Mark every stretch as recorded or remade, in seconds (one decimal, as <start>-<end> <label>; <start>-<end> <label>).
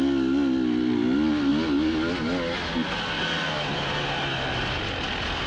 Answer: 0.0-5.5 recorded